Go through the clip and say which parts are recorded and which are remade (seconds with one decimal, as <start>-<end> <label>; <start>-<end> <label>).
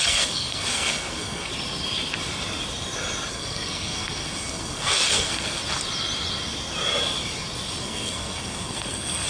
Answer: 0.0-1.5 remade; 1.5-3.3 recorded; 3.3-5.6 remade; 5.6-7.8 recorded; 7.8-9.3 remade